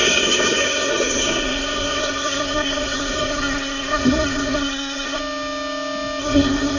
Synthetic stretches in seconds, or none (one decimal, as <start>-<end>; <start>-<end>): 0.0-5.2; 6.2-6.8